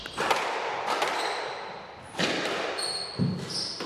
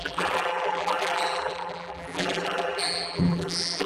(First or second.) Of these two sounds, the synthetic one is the second